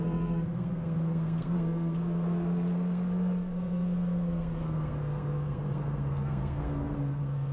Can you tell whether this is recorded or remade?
remade